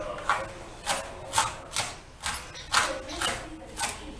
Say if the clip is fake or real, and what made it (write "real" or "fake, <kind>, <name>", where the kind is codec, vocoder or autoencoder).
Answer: real